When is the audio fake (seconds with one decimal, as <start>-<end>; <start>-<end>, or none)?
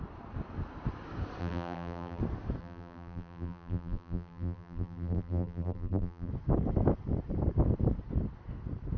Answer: 1.4-2.2; 2.6-6.3